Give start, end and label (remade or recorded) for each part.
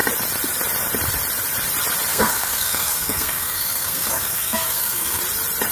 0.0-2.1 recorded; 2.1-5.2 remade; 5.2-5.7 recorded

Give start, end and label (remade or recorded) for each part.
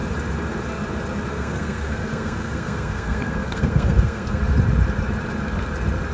0.0-1.3 recorded; 1.3-4.4 remade; 4.4-6.1 recorded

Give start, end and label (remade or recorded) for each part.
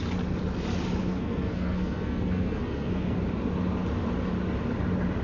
0.0-1.0 recorded; 1.0-3.2 remade; 3.2-5.2 recorded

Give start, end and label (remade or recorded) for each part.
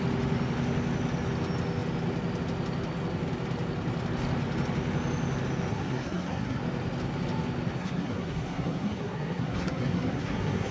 0.0-5.7 recorded; 5.7-6.6 remade; 6.6-7.8 recorded; 7.8-10.7 remade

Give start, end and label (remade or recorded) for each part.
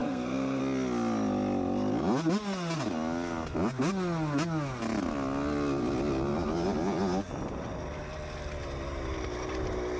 0.0-0.6 remade; 0.6-10.0 recorded